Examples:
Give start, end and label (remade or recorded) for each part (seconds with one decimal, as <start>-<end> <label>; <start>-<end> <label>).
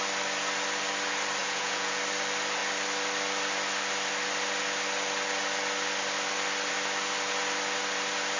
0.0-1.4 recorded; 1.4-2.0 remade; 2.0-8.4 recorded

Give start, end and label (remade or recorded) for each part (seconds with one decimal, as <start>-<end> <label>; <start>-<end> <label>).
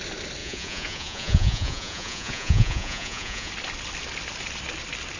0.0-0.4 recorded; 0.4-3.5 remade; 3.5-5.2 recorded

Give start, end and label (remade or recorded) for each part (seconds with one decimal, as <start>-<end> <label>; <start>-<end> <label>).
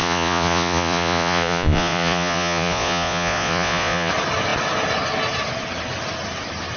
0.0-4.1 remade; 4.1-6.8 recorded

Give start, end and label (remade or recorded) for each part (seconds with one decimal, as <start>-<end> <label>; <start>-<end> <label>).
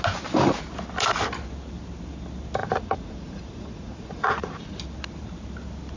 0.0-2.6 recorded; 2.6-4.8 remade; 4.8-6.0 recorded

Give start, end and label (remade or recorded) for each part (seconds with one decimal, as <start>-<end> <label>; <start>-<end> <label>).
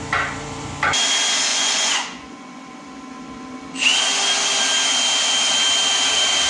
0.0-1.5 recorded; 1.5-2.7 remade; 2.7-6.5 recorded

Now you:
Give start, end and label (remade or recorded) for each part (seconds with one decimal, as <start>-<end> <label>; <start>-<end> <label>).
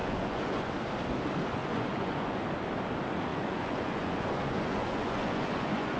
0.0-0.7 remade; 0.7-1.6 recorded; 1.6-2.4 remade; 2.4-3.3 recorded; 3.3-6.0 remade